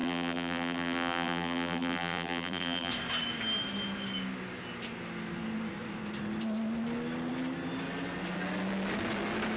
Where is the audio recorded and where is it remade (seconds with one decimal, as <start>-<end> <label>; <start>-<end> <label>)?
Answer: 0.0-2.9 remade; 2.9-9.6 recorded